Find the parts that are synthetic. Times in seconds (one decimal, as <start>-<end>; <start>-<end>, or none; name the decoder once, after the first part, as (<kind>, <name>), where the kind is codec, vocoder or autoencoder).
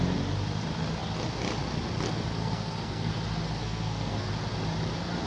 2.4-3.1 (codec, SNAC); 3.6-4.3